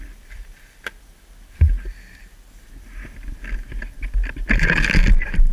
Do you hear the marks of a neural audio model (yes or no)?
no